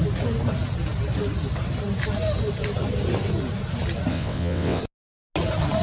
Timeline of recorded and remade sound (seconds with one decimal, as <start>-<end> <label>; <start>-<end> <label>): 0.0-4.1 recorded; 4.1-4.8 remade; 4.8-5.8 recorded